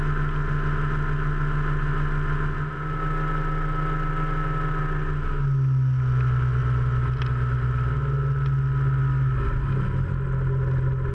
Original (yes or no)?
yes